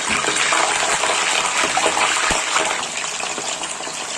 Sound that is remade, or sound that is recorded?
recorded